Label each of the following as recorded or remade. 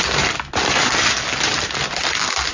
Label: recorded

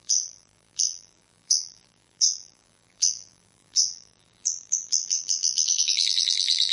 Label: remade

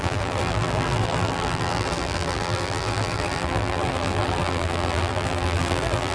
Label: remade